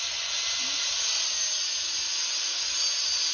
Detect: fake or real real